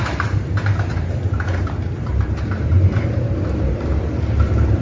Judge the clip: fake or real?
fake